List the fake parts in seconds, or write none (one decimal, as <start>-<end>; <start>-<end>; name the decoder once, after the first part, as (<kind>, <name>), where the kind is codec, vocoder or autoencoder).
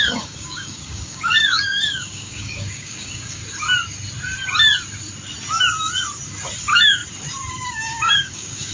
0.0-3.4 (codec, DAC); 6.6-7.0; 7.5-8.7